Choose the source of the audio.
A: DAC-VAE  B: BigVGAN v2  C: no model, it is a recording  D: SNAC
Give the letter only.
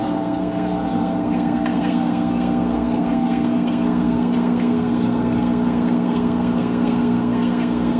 D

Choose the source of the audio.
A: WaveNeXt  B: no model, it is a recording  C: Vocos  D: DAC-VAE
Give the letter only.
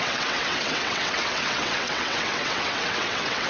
A